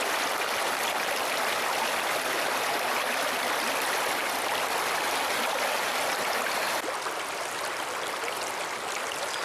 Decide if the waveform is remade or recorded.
recorded